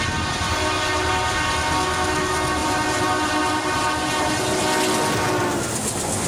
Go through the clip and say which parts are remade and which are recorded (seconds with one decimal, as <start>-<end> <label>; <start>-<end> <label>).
0.0-6.3 recorded